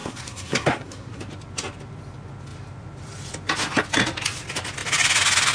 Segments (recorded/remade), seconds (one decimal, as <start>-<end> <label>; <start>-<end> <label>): 0.0-1.2 remade; 1.2-5.5 recorded